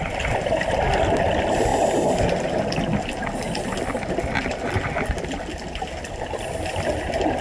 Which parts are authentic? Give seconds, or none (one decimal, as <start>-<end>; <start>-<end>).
0.0-7.4